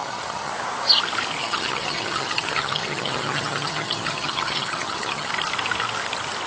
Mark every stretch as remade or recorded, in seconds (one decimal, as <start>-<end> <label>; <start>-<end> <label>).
0.0-0.5 remade; 0.5-1.4 recorded; 1.4-5.3 remade; 5.3-6.5 recorded